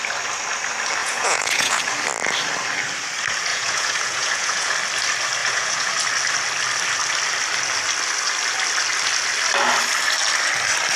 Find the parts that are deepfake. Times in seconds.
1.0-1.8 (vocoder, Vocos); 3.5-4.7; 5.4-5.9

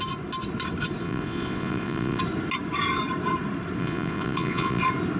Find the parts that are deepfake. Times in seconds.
1.0-2.2 (vocoder, Vocos); 3.8-4.8

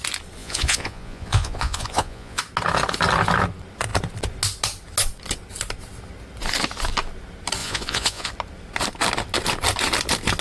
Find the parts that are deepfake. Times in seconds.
0.4-2.4 (vocoder, Vocos); 7.6-8.3

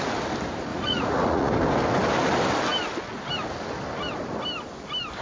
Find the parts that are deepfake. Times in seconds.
0.7-1.5 (vocoder, Vocos)